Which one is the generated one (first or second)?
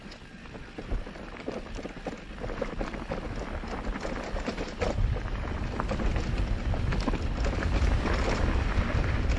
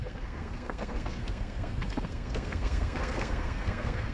second